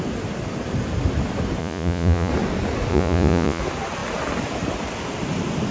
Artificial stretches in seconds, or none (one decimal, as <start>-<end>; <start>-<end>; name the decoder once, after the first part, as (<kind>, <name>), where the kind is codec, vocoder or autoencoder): 1.6-2.3 (vocoder, Vocos); 2.9-3.6